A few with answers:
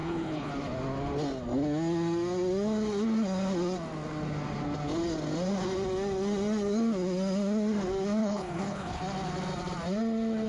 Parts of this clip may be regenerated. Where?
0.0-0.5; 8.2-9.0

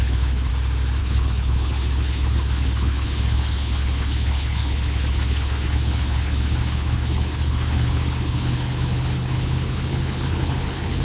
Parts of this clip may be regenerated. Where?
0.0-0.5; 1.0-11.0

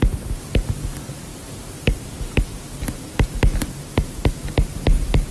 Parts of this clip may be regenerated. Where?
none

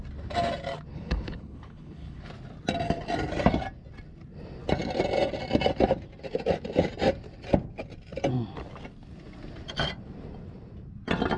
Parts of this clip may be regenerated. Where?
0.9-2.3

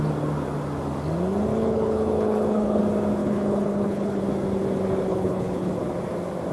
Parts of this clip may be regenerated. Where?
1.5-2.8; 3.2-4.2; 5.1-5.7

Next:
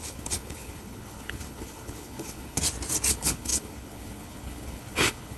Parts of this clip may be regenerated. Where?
0.0-2.6; 3.1-5.4